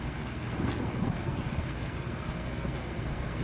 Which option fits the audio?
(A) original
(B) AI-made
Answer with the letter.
B